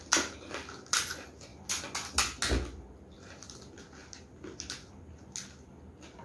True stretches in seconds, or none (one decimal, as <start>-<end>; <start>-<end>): 0.0-6.2